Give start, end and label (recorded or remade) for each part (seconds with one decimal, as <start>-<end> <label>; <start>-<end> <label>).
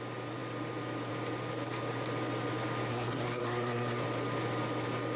0.0-2.9 recorded; 2.9-4.0 remade; 4.0-5.2 recorded